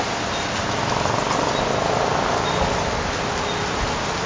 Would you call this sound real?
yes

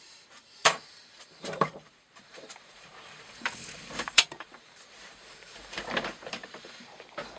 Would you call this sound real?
no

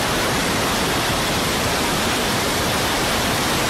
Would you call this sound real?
no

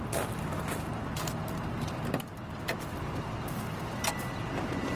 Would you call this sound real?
yes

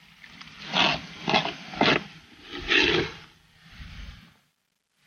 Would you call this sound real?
yes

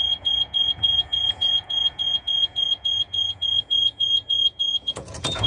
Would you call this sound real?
no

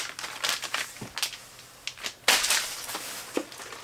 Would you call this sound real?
yes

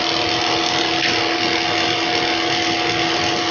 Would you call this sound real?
yes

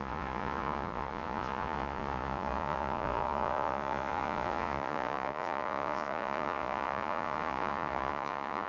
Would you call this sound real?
no